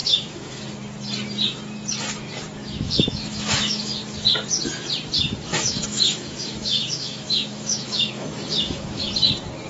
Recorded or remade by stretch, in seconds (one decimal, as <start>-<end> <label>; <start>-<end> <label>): 0.0-0.6 remade; 0.6-2.6 recorded; 2.6-3.9 remade; 3.9-5.5 recorded; 5.5-9.1 remade; 9.1-9.7 recorded